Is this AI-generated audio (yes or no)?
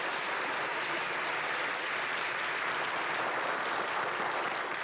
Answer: no